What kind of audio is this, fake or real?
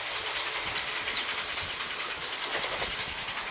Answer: real